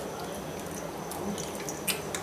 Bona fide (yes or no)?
yes